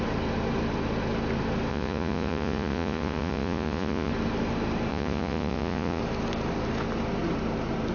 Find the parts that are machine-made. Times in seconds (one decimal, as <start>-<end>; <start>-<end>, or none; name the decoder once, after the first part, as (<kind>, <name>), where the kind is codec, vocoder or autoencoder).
1.7-4.1 (vocoder, Vocos); 4.9-6.0